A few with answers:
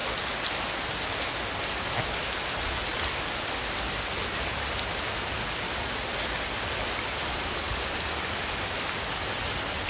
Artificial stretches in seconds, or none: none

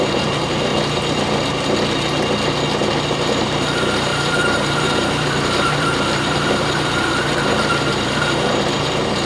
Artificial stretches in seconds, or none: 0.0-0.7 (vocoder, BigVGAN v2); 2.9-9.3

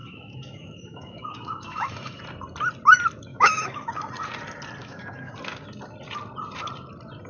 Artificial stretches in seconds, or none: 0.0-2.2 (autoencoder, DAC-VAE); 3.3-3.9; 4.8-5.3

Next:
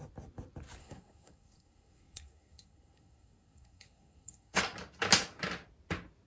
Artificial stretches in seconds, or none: 0.8-4.6 (codec, SNAC)